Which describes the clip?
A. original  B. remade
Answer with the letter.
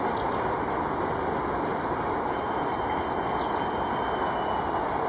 A